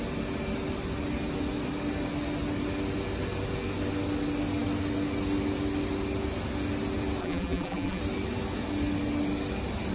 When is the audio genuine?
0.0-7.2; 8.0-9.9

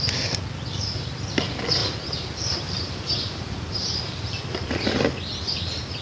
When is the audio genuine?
0.0-1.8; 5.0-6.0

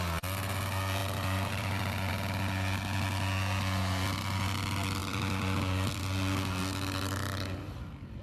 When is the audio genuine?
0.0-1.0; 2.1-5.0; 6.0-8.2

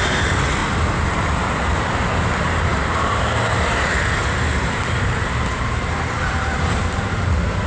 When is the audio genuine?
0.0-2.7; 7.3-7.7

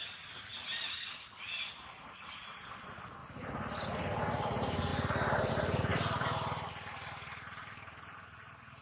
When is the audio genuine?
0.0-0.5; 2.6-3.2; 4.0-5.9; 6.7-8.8

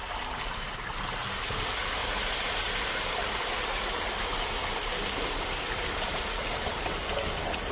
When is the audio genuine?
1.0-2.0; 6.6-7.7